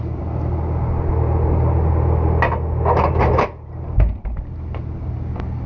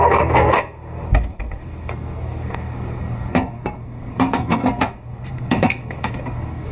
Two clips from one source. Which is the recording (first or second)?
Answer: first